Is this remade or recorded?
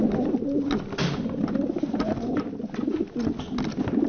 recorded